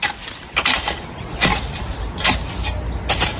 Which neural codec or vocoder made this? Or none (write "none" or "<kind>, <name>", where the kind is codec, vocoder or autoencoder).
none